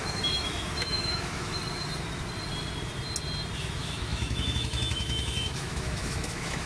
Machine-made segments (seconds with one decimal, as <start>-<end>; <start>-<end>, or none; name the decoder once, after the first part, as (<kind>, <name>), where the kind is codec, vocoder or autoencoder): 0.0-1.6 (autoencoder, DAC-VAE); 3.6-6.7